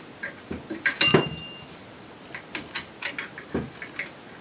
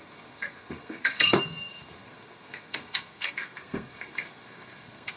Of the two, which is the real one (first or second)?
first